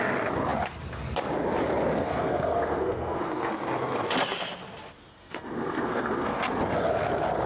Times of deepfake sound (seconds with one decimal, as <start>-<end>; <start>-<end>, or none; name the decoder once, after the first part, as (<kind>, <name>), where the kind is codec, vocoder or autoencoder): 2.0-3.5 (codec, SNAC); 5.1-6.4